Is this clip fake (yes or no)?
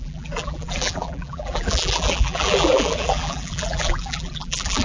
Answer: yes